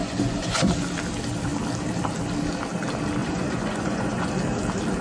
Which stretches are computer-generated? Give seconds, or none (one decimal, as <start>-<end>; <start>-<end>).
0.0-0.7; 3.2-4.3